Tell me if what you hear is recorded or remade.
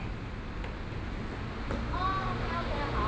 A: recorded